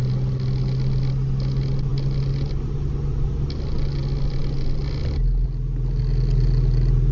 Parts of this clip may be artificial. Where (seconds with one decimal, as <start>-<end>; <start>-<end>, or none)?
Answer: none